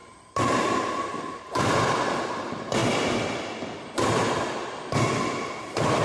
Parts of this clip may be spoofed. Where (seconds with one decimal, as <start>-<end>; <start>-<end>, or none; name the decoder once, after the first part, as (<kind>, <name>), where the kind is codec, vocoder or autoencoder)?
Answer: 0.0-1.4 (vocoder, BigVGAN v2)